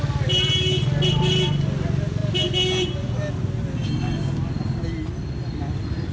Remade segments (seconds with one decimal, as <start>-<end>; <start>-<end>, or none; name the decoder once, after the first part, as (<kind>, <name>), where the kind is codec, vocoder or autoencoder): none